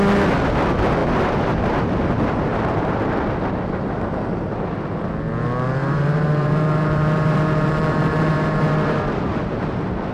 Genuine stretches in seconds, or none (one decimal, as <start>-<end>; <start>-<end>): 0.0-5.8; 9.7-10.1

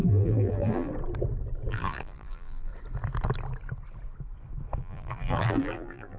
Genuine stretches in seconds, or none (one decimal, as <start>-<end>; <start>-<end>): 0.9-1.7; 2.7-4.8

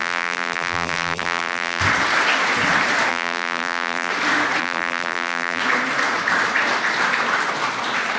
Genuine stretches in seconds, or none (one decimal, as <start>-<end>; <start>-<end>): 1.8-3.1; 4.1-4.6; 5.6-8.2

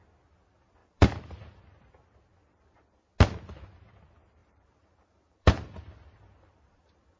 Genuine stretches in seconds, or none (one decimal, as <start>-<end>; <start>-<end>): 0.0-0.8; 1.6-4.4

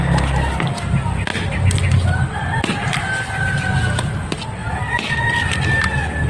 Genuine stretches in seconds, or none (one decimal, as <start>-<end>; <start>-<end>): 0.0-6.3

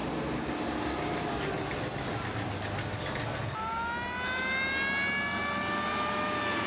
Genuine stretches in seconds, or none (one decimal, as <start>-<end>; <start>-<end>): 1.3-6.7

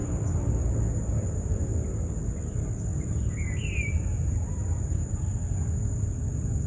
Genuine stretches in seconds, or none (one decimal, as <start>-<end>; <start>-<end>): 0.8-1.5; 5.3-6.7